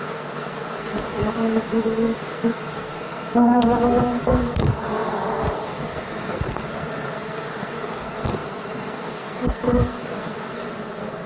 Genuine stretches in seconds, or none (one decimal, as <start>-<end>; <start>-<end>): none